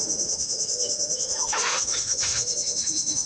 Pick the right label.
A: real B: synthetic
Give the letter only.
B